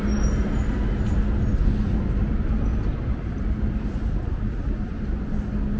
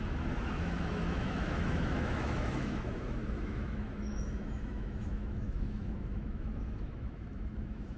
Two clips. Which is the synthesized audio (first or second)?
second